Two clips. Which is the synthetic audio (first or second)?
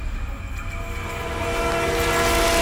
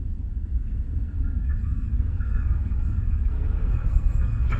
second